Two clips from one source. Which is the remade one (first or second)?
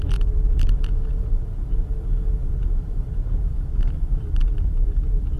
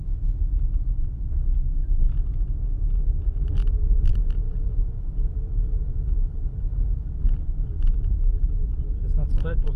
second